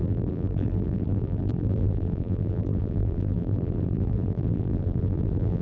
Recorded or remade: remade